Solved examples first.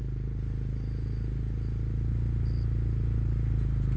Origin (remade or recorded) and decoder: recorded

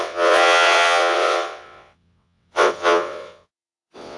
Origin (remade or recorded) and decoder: remade, vocoder, WaveNeXt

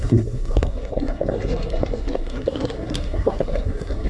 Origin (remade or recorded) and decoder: remade, codec, SNAC